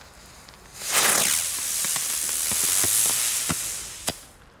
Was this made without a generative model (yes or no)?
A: yes